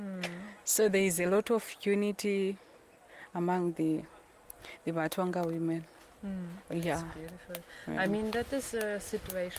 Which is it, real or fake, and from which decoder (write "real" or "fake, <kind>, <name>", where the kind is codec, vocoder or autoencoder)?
real